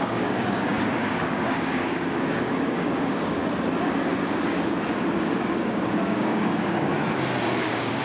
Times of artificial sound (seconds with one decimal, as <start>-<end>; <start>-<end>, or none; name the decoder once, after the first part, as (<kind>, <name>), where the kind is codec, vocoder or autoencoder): 0.0-3.4 (codec, DAC); 5.2-6.9; 7.6-8.0